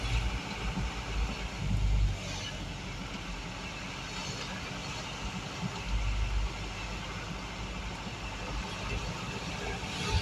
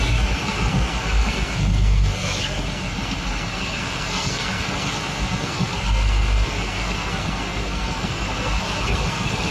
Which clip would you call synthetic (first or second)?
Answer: second